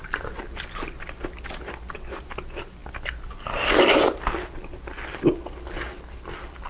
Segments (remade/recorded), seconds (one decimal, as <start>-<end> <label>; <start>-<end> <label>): 0.0-6.7 recorded